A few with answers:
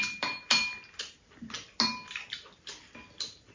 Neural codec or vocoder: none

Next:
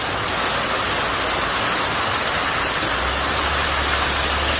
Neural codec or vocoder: none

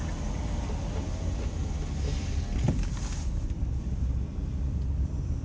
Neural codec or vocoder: none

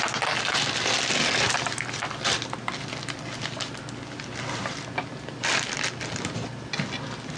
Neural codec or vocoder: none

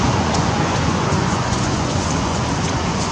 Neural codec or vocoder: vocoder, Vocos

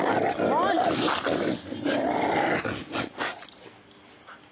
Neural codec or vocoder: none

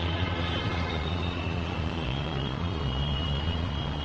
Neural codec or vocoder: vocoder, Vocos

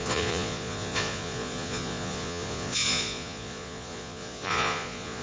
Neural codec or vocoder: vocoder, Vocos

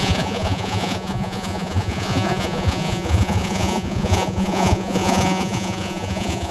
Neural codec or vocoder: vocoder, Vocos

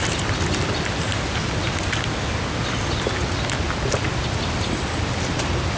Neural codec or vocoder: none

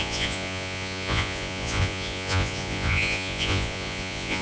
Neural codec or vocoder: vocoder, Vocos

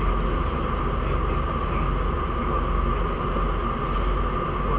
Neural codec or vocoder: none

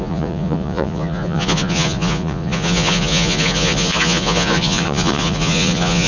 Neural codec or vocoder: vocoder, Vocos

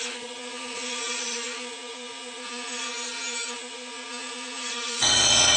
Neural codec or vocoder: vocoder, Vocos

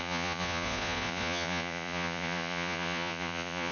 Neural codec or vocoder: vocoder, Vocos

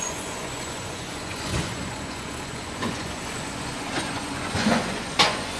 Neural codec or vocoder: vocoder, Vocos